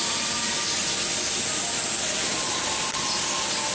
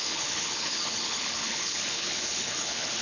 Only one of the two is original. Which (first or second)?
first